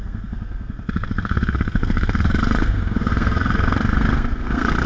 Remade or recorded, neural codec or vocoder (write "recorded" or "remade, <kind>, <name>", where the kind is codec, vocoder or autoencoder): remade, codec, SNAC